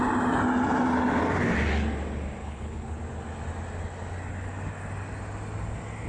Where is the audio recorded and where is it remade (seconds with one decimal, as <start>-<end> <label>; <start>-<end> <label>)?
0.0-2.4 recorded; 2.4-3.0 remade; 3.0-6.1 recorded

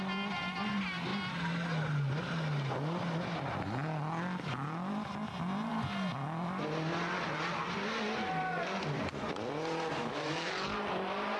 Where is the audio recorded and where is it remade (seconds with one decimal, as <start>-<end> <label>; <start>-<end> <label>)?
0.0-10.0 recorded; 10.0-10.5 remade; 10.5-11.4 recorded

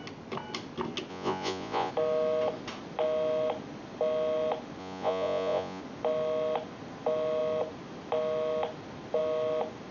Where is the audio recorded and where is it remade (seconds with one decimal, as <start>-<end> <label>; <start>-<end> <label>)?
0.0-1.1 recorded; 1.1-1.9 remade; 1.9-4.8 recorded; 4.8-5.8 remade; 5.8-9.9 recorded

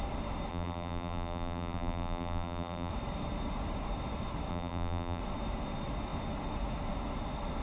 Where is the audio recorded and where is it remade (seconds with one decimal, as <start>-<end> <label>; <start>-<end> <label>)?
0.0-0.5 recorded; 0.5-2.9 remade; 2.9-4.5 recorded; 4.5-5.2 remade; 5.2-7.6 recorded

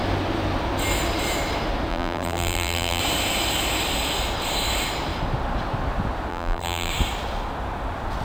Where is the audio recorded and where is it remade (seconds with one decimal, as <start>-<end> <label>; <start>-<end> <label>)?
0.0-1.9 recorded; 1.9-3.0 remade; 3.0-6.3 recorded; 6.3-6.9 remade; 6.9-8.2 recorded